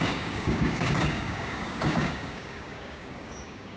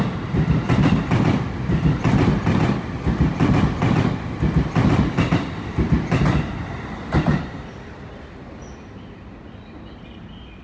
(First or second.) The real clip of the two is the second